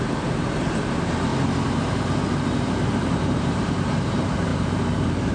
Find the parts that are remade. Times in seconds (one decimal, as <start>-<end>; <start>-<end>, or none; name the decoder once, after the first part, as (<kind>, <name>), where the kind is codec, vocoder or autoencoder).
0.0-1.3 (vocoder, BigVGAN v2); 3.3-5.3

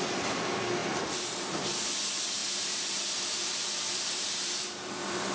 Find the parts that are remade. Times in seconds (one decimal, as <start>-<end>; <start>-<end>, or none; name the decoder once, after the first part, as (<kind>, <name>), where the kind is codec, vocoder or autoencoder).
0.8-1.9 (vocoder, BigVGAN v2); 2.4-5.3

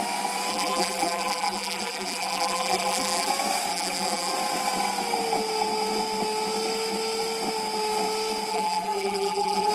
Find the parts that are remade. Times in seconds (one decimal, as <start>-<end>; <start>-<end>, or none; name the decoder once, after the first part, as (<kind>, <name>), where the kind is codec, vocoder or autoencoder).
0.5-3.3 (vocoder, BigVGAN v2); 3.7-4.3; 8.5-9.7

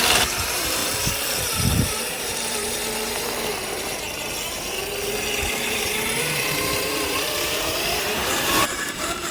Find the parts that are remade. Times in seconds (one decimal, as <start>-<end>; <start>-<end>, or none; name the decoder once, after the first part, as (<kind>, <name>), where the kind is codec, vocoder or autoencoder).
0.0-0.8 (vocoder, BigVGAN v2); 1.8-2.8; 5.5-9.3

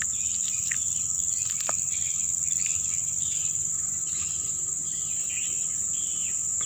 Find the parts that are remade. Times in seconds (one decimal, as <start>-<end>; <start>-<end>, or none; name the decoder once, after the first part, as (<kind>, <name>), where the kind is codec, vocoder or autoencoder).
3.0-5.3 (vocoder, BigVGAN v2)

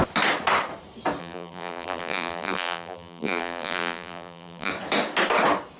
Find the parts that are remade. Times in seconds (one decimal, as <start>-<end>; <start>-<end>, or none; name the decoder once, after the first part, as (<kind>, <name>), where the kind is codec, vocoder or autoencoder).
1.2-4.7 (vocoder, BigVGAN v2)

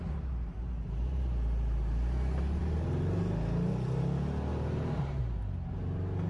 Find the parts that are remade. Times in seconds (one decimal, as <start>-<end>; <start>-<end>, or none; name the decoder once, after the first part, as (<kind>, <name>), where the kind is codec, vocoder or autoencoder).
4.5-5.2 (vocoder, BigVGAN v2)

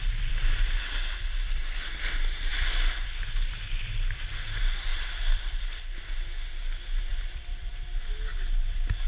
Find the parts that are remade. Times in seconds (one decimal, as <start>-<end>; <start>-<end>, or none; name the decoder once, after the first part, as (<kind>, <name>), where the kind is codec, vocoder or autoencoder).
4.9-5.8 (vocoder, BigVGAN v2); 7.1-7.7